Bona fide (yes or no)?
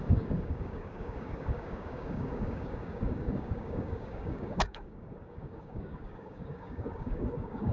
no